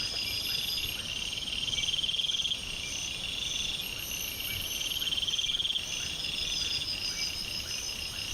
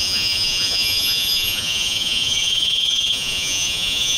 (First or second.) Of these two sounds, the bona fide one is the first